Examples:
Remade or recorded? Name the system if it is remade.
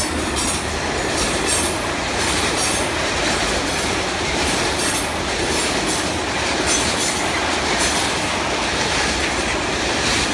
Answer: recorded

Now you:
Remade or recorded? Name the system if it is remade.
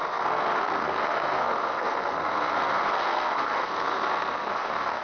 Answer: remade, codec, SNAC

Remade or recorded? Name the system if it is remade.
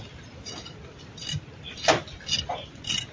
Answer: recorded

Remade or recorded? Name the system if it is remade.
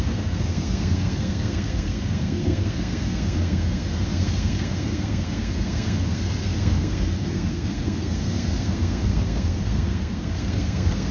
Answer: remade, codec, SNAC